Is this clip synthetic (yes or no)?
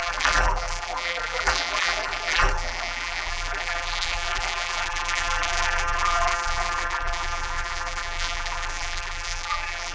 yes